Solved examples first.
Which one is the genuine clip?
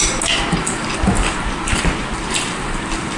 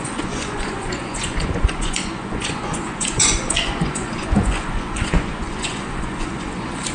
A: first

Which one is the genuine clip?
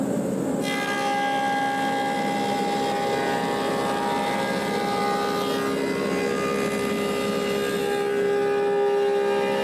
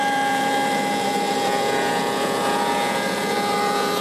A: first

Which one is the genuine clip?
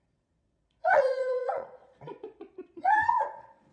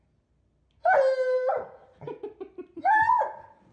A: second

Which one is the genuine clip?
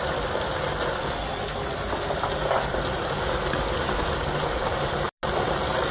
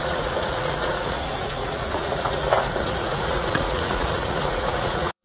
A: first